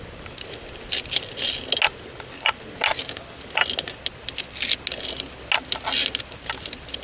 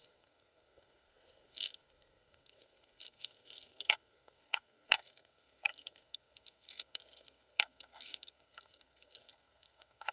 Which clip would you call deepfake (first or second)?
second